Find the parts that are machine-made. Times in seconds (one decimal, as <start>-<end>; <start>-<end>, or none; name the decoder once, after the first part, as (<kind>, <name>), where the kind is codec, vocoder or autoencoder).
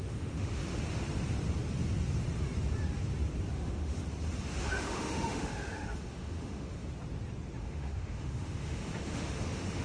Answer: 0.0-0.6 (autoencoder, DAC-VAE); 3.5-4.0; 4.6-6.8; 7.6-9.8